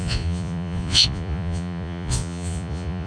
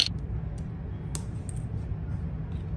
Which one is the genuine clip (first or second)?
second